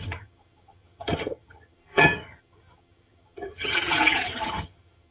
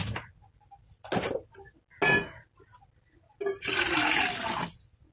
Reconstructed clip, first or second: first